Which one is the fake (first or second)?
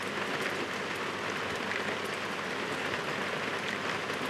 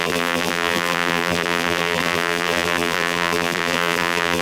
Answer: second